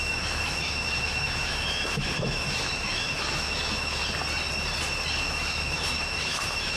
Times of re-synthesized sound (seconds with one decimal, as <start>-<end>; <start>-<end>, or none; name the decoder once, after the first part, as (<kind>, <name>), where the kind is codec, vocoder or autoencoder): 0.0-4.0 (autoencoder, DAC-VAE); 5.1-6.8